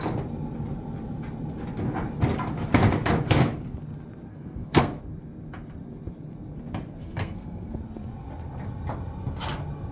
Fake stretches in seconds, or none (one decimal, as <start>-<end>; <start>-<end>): 4.3-5.0; 7.0-7.8